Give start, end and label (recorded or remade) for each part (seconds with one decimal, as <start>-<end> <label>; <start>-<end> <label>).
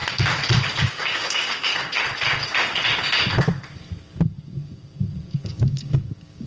0.0-0.8 recorded; 0.8-1.7 remade; 1.7-5.4 recorded; 5.4-6.5 remade